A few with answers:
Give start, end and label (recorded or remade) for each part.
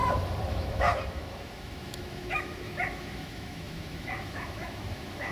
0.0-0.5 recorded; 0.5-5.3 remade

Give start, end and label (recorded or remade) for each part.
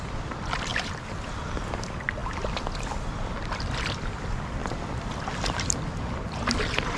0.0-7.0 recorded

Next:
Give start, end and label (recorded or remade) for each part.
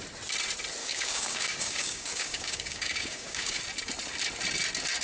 0.0-0.8 recorded; 0.8-3.6 remade; 3.6-5.0 recorded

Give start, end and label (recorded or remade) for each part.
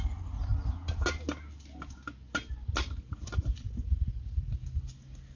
0.0-5.4 recorded